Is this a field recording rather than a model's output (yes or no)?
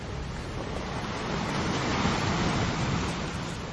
yes